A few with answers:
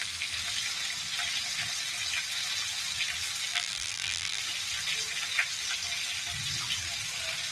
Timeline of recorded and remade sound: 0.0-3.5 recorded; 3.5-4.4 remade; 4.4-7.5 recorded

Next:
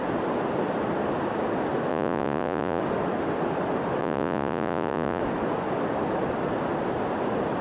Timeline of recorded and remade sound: 0.0-1.9 recorded; 1.9-2.8 remade; 2.8-4.0 recorded; 4.0-5.2 remade; 5.2-7.6 recorded